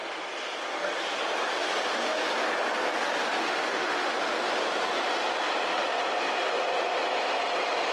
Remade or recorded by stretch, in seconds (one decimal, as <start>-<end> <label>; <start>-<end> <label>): 0.0-3.4 recorded; 3.4-4.1 remade; 4.1-7.9 recorded